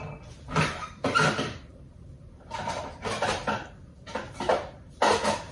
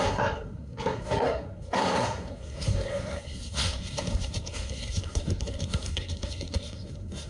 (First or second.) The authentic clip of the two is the first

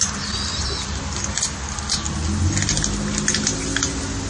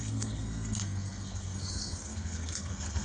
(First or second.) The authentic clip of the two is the first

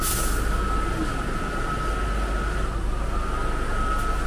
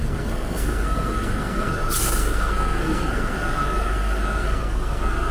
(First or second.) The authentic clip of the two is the first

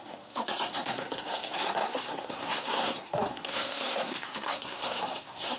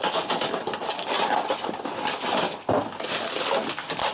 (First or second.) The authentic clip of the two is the second